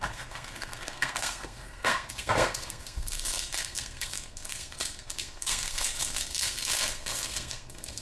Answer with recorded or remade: remade